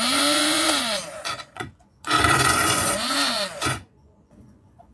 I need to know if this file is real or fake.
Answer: fake